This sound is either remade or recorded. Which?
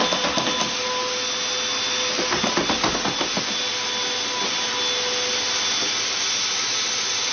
recorded